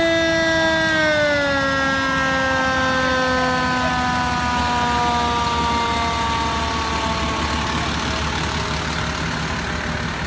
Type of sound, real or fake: real